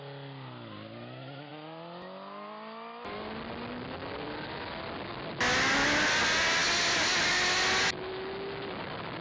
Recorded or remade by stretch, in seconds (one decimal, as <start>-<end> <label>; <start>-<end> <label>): 0.0-9.2 recorded